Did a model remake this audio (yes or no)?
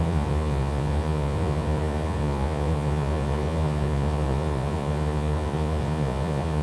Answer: yes